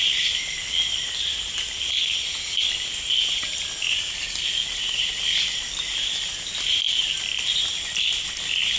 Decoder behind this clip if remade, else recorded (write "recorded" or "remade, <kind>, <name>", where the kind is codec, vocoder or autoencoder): recorded